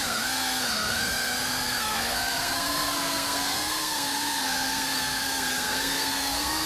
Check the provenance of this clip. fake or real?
fake